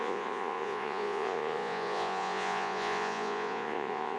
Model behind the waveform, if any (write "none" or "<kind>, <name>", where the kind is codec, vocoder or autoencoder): vocoder, Vocos